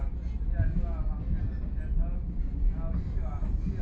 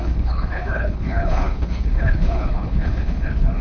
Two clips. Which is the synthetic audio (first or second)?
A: second